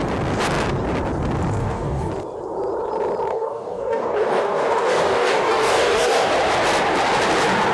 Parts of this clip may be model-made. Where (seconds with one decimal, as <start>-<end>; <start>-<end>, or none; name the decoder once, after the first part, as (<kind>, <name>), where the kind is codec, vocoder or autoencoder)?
1.6-2.1 (codec, DAC); 3.3-6.3